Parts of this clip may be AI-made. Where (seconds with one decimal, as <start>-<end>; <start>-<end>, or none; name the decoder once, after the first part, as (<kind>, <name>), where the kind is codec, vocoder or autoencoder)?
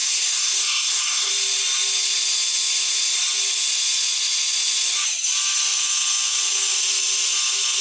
0.0-1.3 (codec, SNAC)